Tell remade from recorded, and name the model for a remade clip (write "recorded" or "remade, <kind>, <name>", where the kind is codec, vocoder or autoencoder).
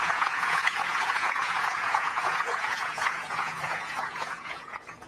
remade, vocoder, Vocos